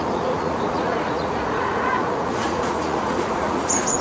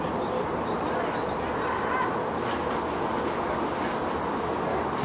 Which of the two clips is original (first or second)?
second